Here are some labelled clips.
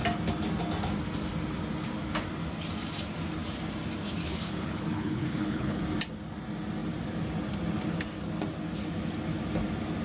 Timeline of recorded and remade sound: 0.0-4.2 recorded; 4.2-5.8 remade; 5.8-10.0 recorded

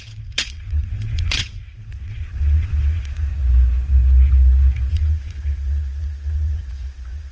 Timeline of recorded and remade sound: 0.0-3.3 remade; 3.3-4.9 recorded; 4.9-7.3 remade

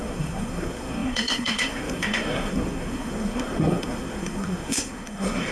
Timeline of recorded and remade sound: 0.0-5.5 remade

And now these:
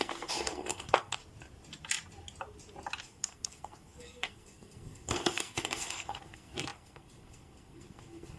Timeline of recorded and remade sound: 0.0-1.2 remade; 1.2-3.0 recorded; 3.0-8.4 remade

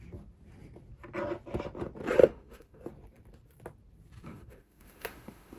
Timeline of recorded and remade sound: 0.0-2.2 recorded; 2.2-2.8 remade; 2.8-4.3 recorded; 4.3-5.6 remade

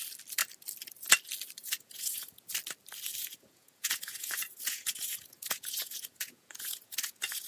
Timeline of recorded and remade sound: 0.0-1.6 recorded; 1.6-2.5 remade; 2.5-3.2 recorded; 3.2-7.5 remade